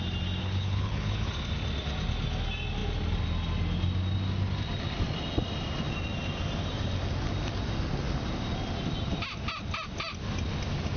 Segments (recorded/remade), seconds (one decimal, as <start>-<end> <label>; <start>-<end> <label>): 0.0-0.4 recorded; 0.4-1.3 remade; 1.3-11.0 recorded